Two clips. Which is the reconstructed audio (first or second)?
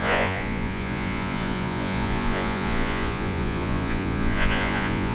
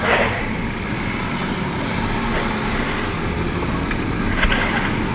first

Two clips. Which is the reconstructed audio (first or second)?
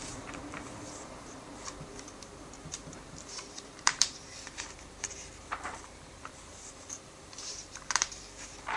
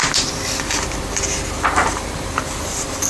first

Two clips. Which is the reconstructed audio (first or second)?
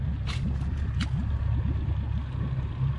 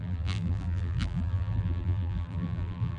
second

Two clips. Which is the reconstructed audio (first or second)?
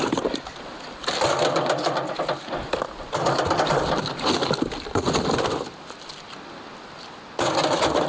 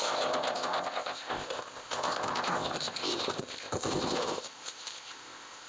second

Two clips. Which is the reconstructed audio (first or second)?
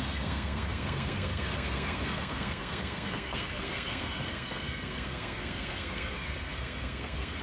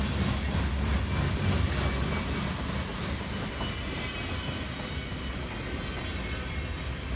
first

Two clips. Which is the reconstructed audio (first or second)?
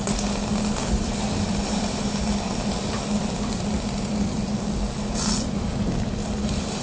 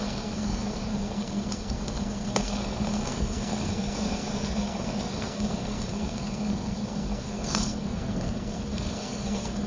second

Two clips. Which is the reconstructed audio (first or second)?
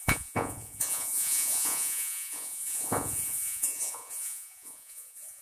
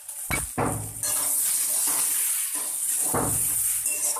first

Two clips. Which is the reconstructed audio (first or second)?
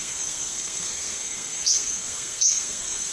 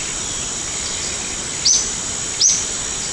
first